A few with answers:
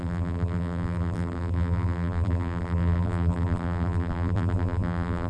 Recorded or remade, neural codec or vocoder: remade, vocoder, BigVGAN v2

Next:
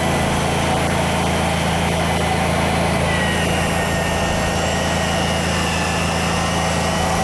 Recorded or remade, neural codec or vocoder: recorded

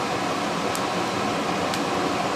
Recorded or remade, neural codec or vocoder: recorded